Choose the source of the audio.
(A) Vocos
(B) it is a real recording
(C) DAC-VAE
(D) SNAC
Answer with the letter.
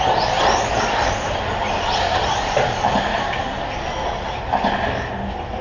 B